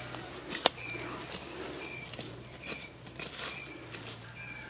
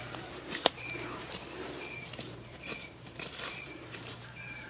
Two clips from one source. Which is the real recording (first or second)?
first